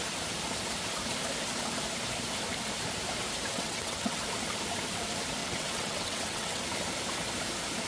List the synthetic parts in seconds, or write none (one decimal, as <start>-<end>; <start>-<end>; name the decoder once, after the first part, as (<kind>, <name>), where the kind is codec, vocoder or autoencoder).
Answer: 3.5-4.2 (vocoder, WaveNeXt); 5.4-6.6